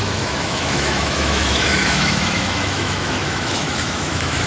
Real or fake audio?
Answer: fake